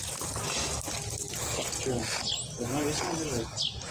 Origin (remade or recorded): recorded